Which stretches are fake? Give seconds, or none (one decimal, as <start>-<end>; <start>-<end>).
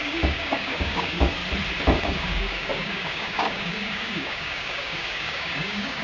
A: 0.0-1.4; 2.0-6.0